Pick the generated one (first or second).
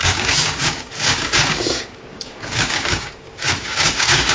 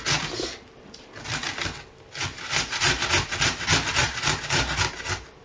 first